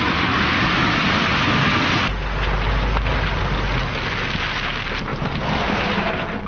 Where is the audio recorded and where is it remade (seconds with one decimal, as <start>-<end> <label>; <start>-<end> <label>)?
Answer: 0.0-5.1 recorded; 5.1-6.5 remade